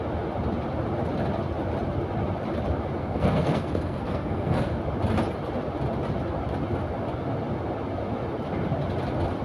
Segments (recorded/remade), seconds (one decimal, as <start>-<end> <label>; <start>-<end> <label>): 0.0-3.0 recorded; 3.0-4.8 remade; 4.8-9.4 recorded